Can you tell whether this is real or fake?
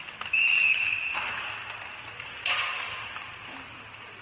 fake